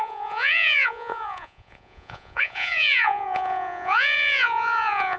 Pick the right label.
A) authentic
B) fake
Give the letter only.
B